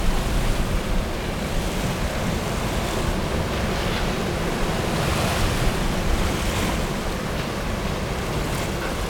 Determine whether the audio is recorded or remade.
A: recorded